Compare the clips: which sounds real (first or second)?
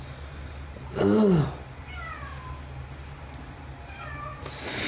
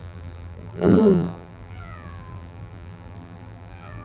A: first